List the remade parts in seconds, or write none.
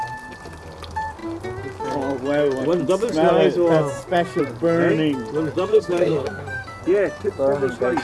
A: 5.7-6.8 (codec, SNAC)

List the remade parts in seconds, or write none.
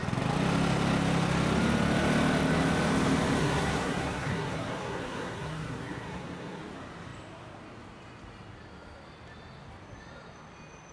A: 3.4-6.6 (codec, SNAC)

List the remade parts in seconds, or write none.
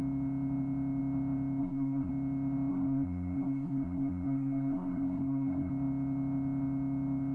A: 1.6-2.1 (codec, SNAC); 2.7-5.7